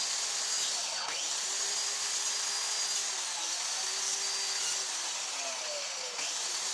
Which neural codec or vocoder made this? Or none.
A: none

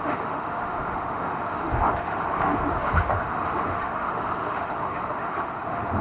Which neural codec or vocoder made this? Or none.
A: autoencoder, DAC-VAE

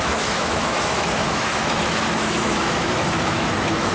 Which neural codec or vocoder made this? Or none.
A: autoencoder, DAC-VAE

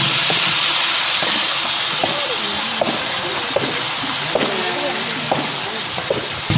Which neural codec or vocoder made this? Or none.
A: none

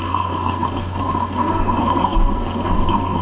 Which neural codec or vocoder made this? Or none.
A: codec, SNAC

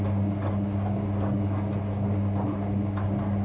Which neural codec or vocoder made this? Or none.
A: none